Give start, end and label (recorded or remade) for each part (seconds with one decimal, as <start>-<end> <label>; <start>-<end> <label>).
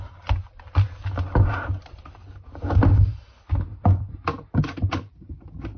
0.0-2.2 remade; 2.2-4.6 recorded; 4.6-5.8 remade